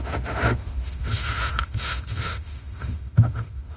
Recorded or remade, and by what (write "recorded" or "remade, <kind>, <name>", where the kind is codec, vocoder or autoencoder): remade, autoencoder, DAC-VAE